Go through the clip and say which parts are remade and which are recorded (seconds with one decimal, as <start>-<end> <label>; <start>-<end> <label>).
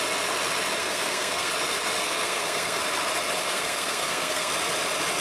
0.0-0.8 recorded; 0.8-1.5 remade; 1.5-2.0 recorded; 2.0-2.8 remade; 2.8-3.4 recorded; 3.4-4.5 remade; 4.5-5.2 recorded